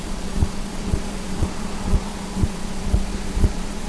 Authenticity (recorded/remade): remade